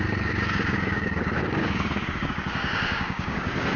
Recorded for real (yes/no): no